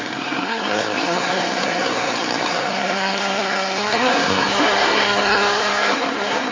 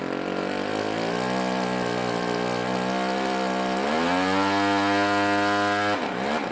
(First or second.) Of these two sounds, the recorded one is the second